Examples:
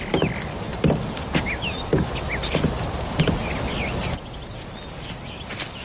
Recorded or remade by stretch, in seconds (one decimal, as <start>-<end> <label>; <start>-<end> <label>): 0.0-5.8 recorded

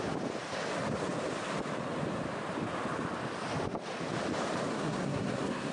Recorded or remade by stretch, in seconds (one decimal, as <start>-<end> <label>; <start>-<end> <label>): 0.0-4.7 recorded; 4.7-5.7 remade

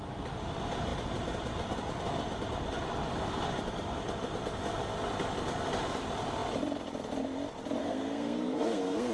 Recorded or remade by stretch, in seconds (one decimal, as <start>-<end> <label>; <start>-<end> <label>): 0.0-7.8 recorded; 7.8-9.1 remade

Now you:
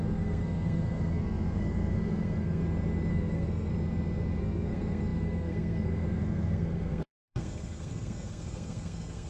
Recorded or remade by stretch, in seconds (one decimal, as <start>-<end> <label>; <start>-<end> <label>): 0.0-2.6 remade; 2.6-3.1 recorded; 3.1-3.7 remade; 3.7-4.4 recorded; 4.4-9.3 remade

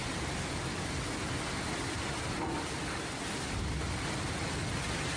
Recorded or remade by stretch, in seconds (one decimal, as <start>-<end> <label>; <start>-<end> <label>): 0.0-5.2 recorded

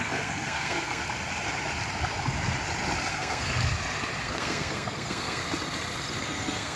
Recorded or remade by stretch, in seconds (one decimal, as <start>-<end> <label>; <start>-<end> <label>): 0.0-1.0 remade; 1.0-3.1 recorded; 3.1-3.7 remade; 3.7-4.2 recorded; 4.2-5.4 remade; 5.4-6.2 recorded; 6.2-6.8 remade

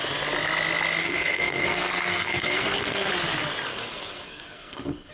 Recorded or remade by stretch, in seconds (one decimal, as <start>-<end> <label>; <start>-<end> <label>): 0.0-1.0 recorded; 1.0-3.1 remade; 3.1-3.7 recorded; 3.7-5.1 remade